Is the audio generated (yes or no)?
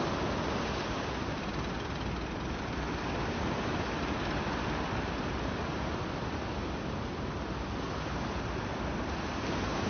no